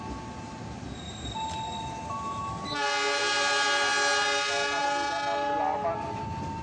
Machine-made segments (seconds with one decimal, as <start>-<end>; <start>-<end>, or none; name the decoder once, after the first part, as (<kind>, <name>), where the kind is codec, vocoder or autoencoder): none